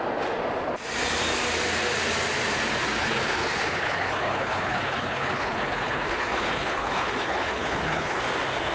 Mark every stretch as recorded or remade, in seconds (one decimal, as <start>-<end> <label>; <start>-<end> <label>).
0.0-3.0 recorded; 3.0-8.2 remade; 8.2-8.7 recorded